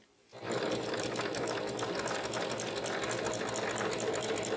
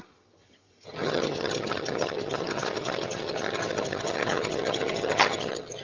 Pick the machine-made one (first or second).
second